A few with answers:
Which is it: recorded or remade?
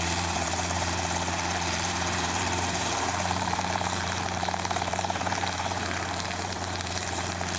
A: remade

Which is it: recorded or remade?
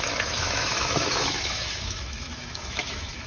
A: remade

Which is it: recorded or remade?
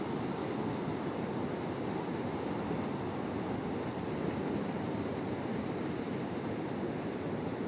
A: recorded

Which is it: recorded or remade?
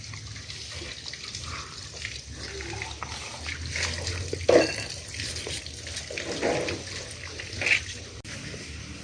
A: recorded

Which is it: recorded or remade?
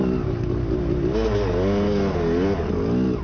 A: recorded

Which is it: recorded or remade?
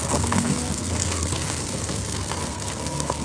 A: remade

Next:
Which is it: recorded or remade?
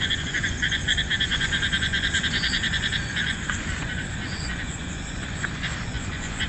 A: remade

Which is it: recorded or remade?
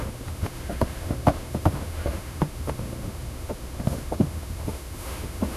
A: remade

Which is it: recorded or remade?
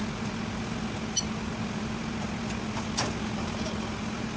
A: recorded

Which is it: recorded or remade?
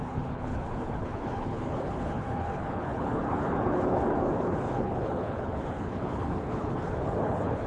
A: remade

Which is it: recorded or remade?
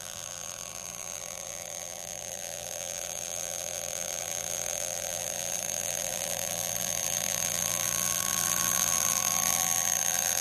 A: remade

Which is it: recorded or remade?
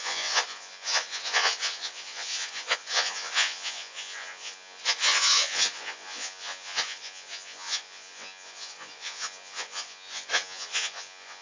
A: remade